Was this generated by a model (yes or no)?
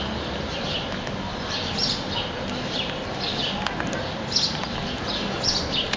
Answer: no